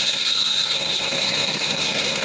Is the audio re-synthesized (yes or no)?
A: yes